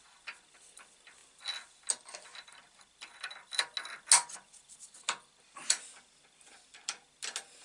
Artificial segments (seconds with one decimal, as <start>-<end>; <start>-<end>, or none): none